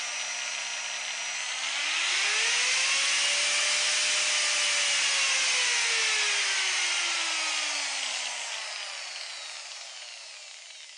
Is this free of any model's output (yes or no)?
yes